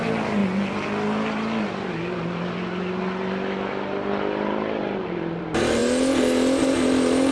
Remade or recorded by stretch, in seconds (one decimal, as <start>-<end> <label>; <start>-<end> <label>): 0.0-0.4 remade; 0.4-4.8 recorded; 4.8-5.8 remade; 5.8-7.3 recorded